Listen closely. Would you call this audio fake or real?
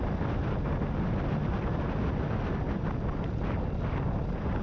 real